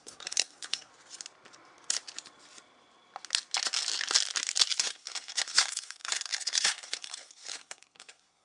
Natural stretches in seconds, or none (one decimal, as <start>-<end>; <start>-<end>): 0.9-4.8